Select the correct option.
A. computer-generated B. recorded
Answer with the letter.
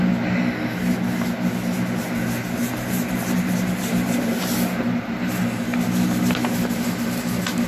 B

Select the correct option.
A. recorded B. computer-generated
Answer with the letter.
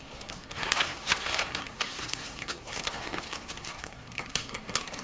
B